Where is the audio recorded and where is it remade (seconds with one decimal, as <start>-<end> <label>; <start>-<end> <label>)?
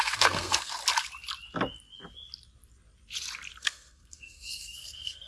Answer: 0.0-0.8 remade; 0.8-3.6 recorded; 3.6-5.3 remade